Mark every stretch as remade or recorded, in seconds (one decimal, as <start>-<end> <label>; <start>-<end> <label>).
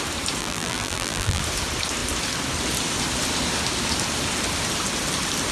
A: 0.0-0.4 recorded; 0.4-1.4 remade; 1.4-5.5 recorded